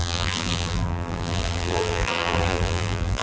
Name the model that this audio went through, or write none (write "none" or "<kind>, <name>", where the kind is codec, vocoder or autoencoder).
vocoder, BigVGAN v2